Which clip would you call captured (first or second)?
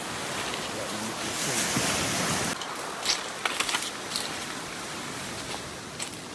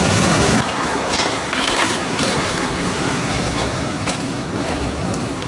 first